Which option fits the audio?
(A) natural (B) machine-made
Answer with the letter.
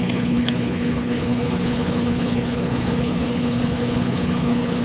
B